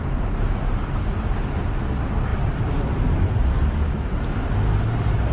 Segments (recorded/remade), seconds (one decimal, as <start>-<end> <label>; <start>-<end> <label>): 0.0-2.3 recorded; 2.3-3.3 remade; 3.3-5.3 recorded